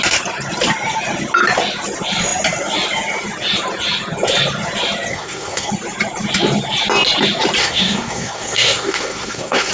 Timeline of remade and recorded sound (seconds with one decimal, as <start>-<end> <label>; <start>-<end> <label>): 0.0-5.1 recorded; 5.1-5.7 remade; 5.7-7.6 recorded; 7.6-9.7 remade